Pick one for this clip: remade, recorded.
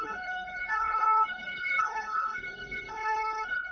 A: remade